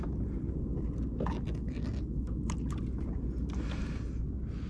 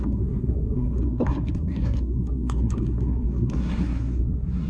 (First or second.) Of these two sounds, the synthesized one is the second